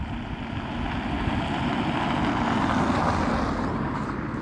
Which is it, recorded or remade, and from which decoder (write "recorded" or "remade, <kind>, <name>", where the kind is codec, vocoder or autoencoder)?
recorded